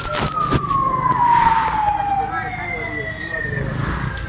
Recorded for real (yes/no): yes